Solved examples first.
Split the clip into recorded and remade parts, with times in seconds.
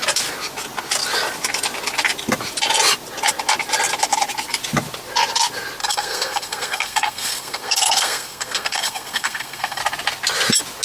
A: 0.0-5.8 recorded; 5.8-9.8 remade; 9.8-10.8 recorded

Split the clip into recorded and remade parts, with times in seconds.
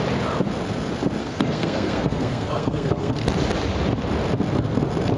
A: 0.0-1.2 recorded; 1.2-3.1 remade; 3.1-5.2 recorded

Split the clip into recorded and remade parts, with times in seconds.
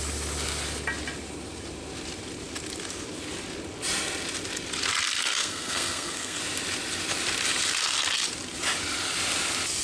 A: 0.0-5.4 recorded; 5.4-6.4 remade; 6.4-9.8 recorded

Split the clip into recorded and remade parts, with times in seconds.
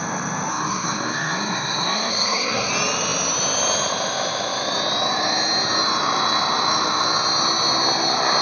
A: 0.0-0.5 recorded; 0.5-2.7 remade; 2.7-8.4 recorded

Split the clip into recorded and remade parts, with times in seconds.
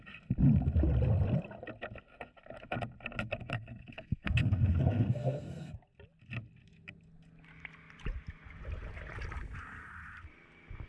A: 0.0-3.4 recorded; 3.4-5.7 remade; 5.7-10.9 recorded